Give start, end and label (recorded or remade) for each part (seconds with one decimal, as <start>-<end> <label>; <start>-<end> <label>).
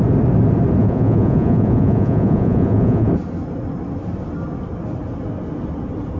0.0-0.8 recorded; 0.8-3.1 remade; 3.1-6.2 recorded